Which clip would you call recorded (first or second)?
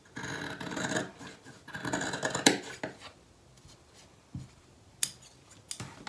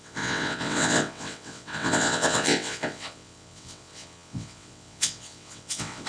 first